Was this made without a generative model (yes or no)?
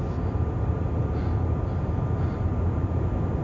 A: yes